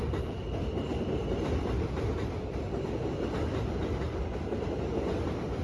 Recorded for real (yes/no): no